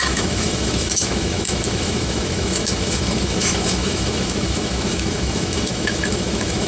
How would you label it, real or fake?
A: fake